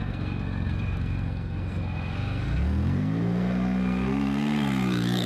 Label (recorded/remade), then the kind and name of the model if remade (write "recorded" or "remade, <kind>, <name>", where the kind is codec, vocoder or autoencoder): remade, codec, SNAC